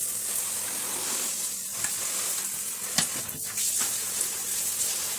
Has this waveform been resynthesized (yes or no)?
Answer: no